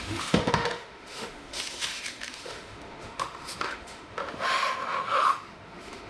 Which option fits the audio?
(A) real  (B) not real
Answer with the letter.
B